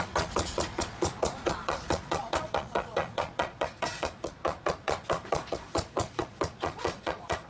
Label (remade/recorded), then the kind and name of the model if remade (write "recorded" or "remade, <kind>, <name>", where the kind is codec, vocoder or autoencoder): remade, vocoder, Vocos